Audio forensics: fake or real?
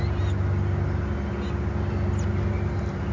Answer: real